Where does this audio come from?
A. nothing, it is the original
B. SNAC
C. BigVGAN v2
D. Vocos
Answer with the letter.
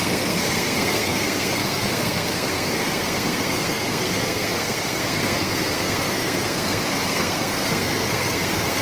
B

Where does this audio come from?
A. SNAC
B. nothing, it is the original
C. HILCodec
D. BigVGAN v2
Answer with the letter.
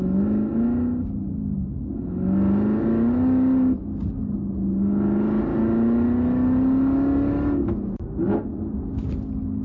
B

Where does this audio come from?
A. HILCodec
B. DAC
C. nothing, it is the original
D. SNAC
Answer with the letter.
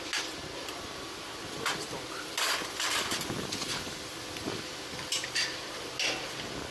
C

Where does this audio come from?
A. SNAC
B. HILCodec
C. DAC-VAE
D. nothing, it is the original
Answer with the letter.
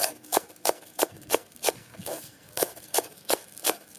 A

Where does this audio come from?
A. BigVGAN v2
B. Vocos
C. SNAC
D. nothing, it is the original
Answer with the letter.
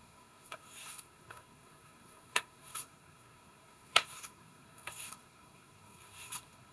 C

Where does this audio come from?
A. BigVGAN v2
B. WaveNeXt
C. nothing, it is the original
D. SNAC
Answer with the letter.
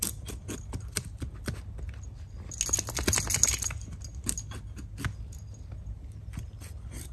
C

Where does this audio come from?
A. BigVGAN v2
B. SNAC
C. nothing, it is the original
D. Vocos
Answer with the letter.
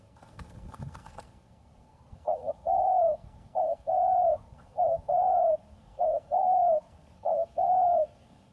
B